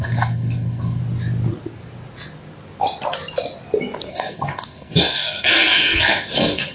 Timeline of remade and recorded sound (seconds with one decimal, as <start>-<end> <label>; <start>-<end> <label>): 0.0-1.0 remade; 1.0-4.1 recorded; 4.1-6.7 remade